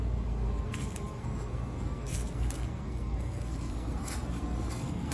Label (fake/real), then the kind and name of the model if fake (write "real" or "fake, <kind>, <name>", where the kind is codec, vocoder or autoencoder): fake, codec, SNAC